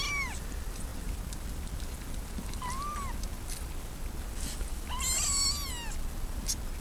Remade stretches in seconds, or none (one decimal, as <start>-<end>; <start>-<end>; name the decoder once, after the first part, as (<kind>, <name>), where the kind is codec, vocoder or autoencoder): none